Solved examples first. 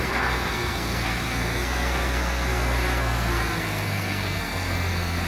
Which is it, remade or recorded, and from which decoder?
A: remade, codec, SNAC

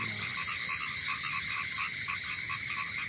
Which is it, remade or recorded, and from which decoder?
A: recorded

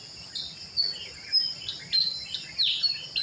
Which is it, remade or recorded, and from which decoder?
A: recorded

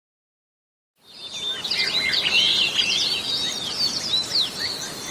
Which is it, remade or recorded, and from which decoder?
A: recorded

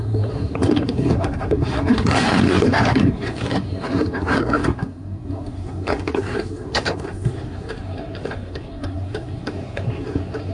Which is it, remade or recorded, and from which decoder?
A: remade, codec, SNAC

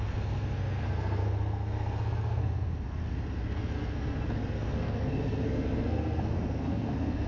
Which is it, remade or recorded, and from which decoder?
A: remade, codec, SNAC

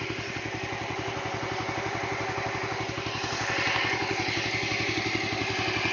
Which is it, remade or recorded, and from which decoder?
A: recorded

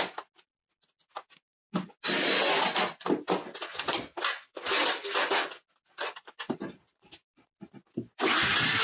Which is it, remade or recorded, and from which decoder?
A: recorded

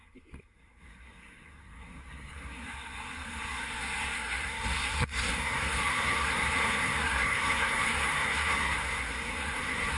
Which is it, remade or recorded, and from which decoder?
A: remade, codec, SNAC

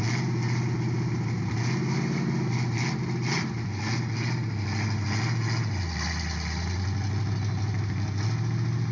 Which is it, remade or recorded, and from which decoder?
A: recorded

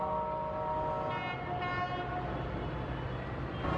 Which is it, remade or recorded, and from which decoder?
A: recorded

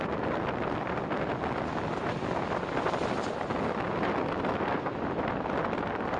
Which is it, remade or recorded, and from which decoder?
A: recorded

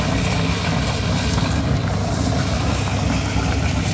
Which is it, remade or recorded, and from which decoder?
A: recorded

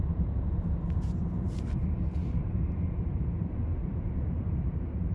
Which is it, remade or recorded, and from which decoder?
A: remade, vocoder, BigVGAN v2